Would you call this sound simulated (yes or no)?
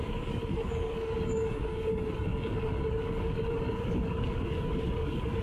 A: yes